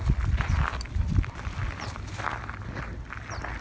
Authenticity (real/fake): real